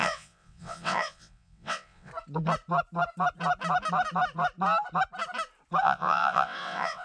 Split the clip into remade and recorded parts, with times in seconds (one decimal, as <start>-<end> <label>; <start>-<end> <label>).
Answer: 0.0-2.1 remade; 2.1-5.8 recorded; 5.8-7.0 remade